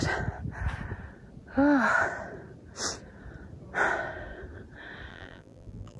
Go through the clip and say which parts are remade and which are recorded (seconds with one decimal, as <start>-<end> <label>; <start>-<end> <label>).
0.0-5.1 recorded; 5.1-6.0 remade